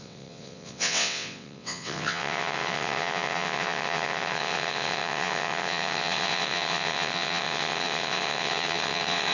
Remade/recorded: remade